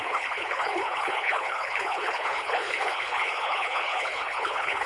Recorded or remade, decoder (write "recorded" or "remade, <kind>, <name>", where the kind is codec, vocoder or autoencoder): remade, codec, HILCodec